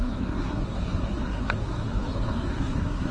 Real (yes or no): no